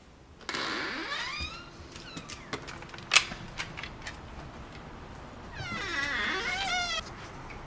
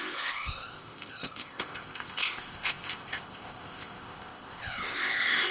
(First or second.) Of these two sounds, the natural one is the first